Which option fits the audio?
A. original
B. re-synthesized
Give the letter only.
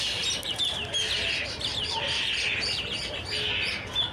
A